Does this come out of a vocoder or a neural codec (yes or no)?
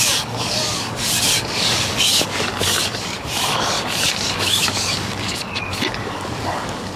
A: yes